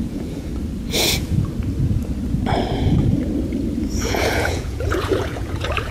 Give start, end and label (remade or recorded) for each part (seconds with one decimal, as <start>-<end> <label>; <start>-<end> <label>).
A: 0.0-0.5 remade; 0.5-4.0 recorded; 4.0-5.9 remade